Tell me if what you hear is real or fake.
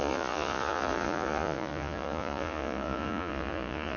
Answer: fake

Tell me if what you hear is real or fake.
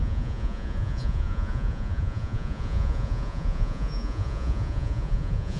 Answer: fake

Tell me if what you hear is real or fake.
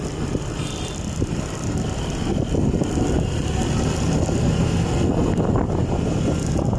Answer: real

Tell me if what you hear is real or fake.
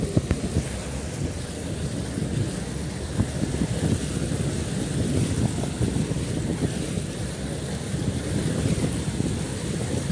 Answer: real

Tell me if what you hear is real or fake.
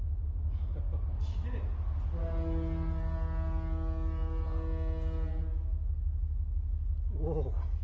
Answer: real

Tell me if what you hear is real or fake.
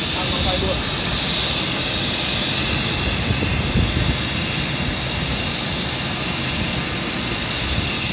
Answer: real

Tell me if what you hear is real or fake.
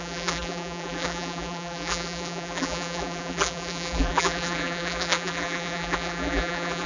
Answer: fake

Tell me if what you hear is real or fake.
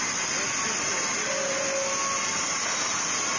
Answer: real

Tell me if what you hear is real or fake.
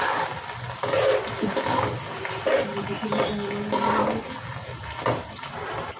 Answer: real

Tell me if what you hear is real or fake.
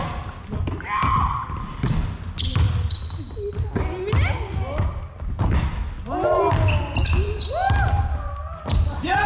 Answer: real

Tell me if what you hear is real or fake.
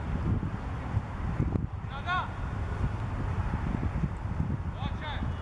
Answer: real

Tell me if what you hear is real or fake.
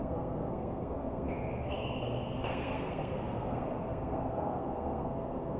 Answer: fake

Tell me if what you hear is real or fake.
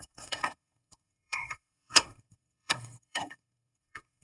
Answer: fake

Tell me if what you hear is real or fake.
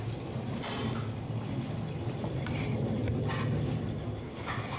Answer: real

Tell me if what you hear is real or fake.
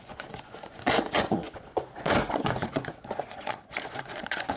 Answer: fake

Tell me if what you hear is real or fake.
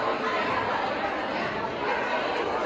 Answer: real